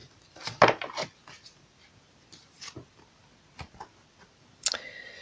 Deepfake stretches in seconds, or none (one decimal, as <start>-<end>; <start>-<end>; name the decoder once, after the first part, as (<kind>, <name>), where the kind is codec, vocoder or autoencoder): none